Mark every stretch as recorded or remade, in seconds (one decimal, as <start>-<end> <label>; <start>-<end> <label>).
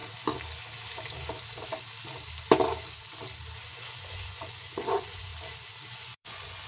0.0-3.7 recorded; 3.7-5.3 remade; 5.3-5.9 recorded; 5.9-6.7 remade